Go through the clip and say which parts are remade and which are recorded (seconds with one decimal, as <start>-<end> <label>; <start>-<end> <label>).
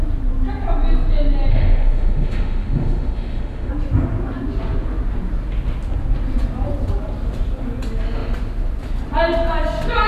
0.0-1.5 recorded; 1.5-3.7 remade; 3.7-10.1 recorded